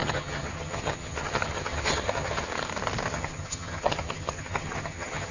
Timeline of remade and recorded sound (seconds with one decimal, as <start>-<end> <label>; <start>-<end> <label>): 0.0-2.5 remade; 2.5-3.1 recorded; 3.1-5.3 remade